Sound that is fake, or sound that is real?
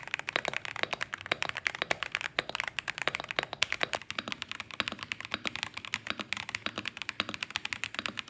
real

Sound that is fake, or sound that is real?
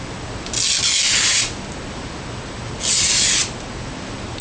real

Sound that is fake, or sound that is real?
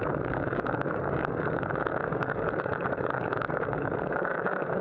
fake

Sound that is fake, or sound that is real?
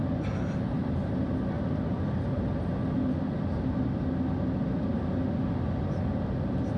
real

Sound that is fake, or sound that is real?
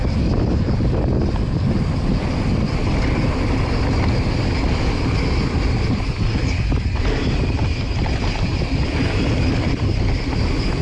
real